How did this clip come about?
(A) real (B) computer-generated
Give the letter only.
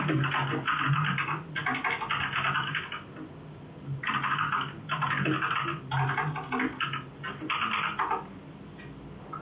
A